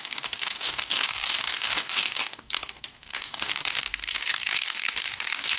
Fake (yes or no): yes